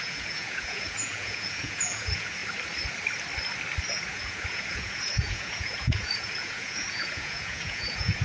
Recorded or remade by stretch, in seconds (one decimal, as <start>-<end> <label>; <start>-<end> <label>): 0.0-2.4 remade; 2.4-3.9 recorded; 3.9-8.2 remade